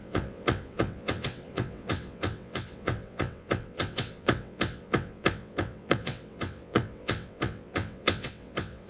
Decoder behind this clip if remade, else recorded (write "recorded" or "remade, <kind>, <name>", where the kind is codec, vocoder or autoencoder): remade, vocoder, WaveNeXt